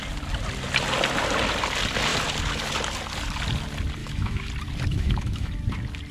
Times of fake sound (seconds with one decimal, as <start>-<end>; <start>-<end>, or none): 4.0-4.5; 4.9-5.5